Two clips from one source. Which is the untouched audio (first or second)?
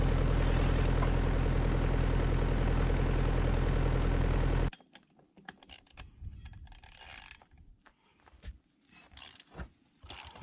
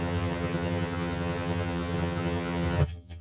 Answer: first